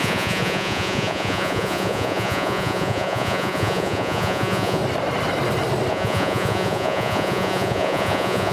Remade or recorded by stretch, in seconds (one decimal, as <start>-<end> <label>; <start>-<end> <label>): 0.0-4.8 remade; 4.8-5.9 recorded; 5.9-8.5 remade